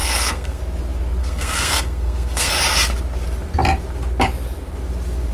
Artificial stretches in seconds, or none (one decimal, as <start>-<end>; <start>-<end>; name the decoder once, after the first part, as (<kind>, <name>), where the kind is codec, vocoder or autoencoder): 0.0-0.6 (codec, SNAC); 1.2-2.5

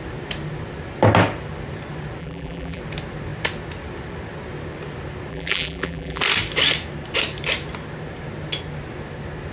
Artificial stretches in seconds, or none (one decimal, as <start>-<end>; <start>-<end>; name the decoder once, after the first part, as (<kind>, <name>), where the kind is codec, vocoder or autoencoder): 2.2-2.8 (vocoder, BigVGAN v2); 5.3-6.2

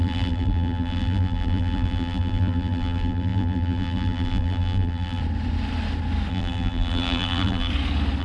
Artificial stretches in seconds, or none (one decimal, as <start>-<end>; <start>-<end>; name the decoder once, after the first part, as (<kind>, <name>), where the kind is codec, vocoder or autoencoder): 0.0-5.2 (vocoder, BigVGAN v2); 6.3-7.7